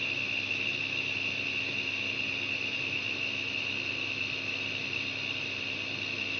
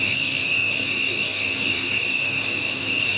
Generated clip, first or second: second